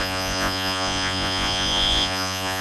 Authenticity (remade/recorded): remade